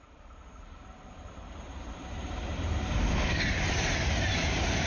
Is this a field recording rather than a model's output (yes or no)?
no